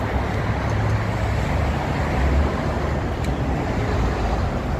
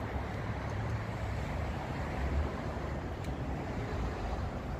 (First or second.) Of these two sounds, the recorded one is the first